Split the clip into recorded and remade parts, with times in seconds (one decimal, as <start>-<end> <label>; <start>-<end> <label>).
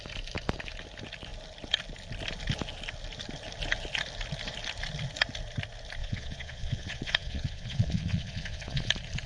0.0-6.0 recorded; 6.0-8.9 remade; 8.9-9.3 recorded